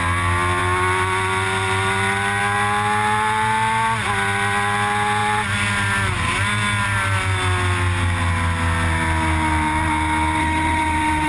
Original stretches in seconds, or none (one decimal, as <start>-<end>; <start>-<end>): 0.0-10.4